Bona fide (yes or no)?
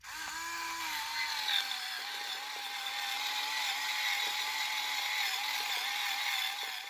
yes